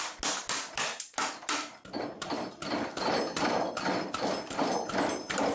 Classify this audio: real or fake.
real